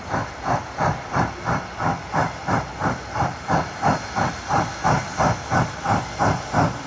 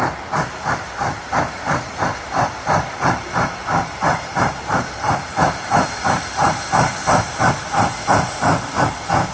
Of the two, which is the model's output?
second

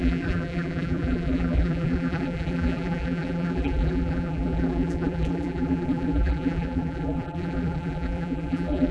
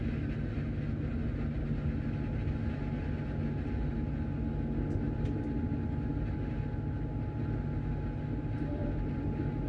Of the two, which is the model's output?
first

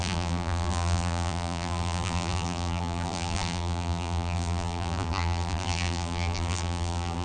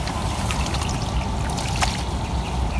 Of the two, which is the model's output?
first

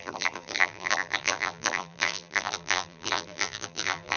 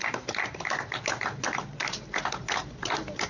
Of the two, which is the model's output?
first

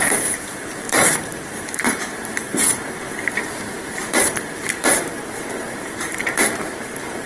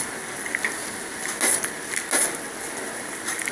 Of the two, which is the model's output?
first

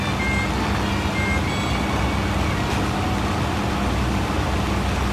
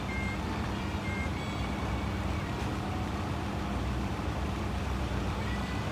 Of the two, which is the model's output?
second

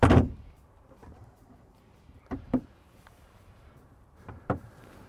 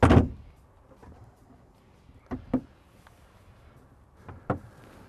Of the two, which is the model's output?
first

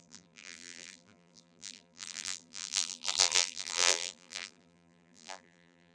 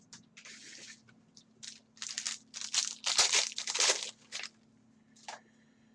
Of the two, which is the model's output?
first